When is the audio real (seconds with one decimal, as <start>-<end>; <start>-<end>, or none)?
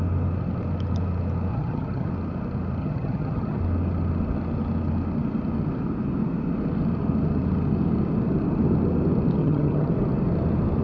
0.0-1.5; 2.1-2.8; 3.6-9.4; 9.9-10.8